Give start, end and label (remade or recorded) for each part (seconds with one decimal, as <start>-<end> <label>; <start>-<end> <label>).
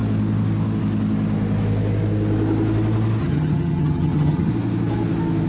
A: 0.0-3.2 recorded; 3.2-4.5 remade; 4.5-5.5 recorded